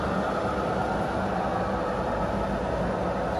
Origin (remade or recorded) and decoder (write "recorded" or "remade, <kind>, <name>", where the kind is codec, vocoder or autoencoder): recorded